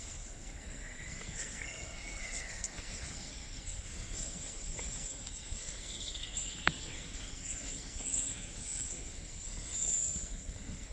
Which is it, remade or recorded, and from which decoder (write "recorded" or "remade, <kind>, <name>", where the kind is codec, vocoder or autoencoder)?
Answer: remade, codec, SNAC